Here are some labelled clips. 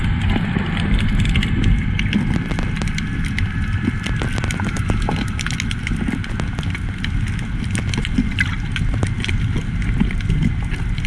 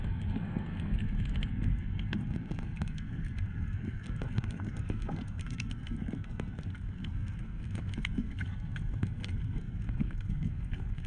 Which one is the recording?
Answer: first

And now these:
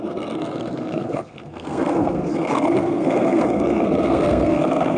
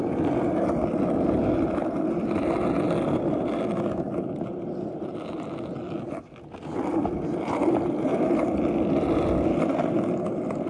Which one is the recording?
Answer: second